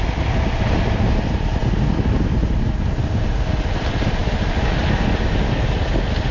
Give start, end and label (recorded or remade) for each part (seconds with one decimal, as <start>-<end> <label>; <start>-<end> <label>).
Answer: 0.0-6.3 recorded